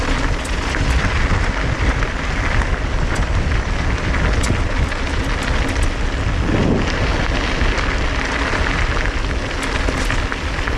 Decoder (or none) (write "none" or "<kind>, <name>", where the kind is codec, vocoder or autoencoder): none